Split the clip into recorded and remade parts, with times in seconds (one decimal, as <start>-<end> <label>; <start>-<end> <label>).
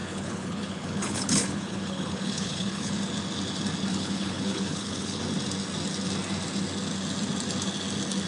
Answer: 0.0-2.9 remade; 2.9-3.9 recorded; 3.9-5.2 remade; 5.2-8.3 recorded